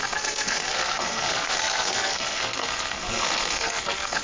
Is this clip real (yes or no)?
no